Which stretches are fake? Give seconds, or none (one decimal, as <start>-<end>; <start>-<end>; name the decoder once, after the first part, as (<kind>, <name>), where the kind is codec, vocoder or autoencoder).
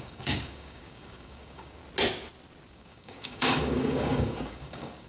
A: 0.0-1.8 (codec, DAC); 2.7-5.1